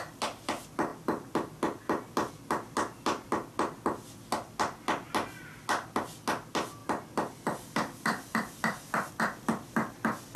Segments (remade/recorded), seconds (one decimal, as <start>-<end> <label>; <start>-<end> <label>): 0.0-10.4 recorded